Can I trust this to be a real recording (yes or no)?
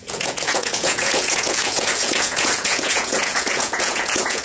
no